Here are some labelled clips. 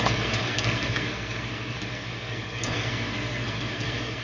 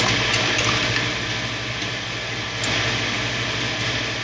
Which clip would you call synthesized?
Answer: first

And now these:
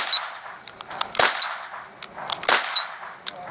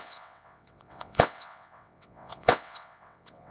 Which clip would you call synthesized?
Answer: second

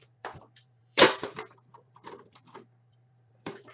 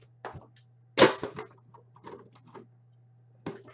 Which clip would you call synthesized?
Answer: first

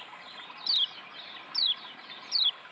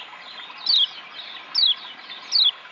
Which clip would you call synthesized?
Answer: first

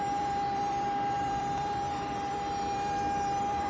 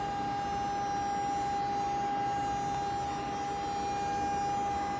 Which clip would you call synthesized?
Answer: first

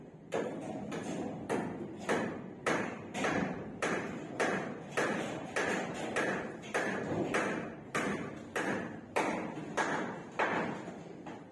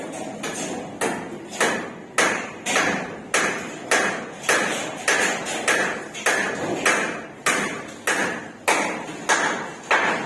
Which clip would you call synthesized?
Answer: first